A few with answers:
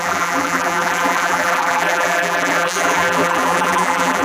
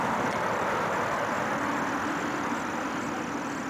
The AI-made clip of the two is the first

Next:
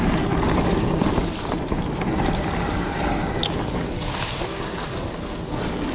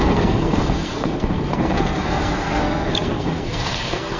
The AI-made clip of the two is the second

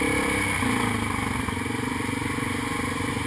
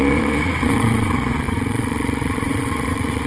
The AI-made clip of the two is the second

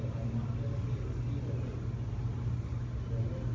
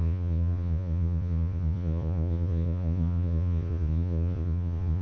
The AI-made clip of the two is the second